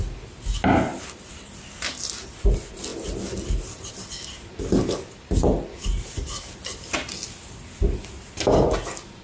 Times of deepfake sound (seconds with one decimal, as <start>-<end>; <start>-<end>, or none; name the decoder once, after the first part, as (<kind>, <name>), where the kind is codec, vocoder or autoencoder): none